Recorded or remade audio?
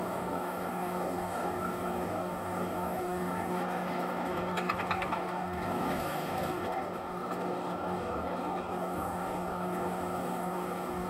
remade